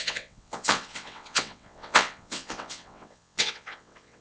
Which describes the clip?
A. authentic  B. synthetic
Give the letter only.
B